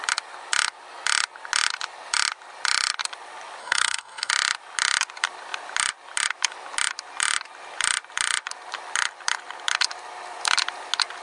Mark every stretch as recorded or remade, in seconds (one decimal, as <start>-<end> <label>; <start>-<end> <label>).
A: 0.0-3.6 recorded; 3.6-4.3 remade; 4.3-11.2 recorded